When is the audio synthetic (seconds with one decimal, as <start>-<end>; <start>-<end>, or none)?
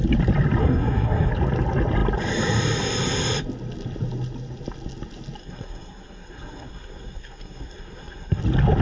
0.6-1.3; 5.4-8.4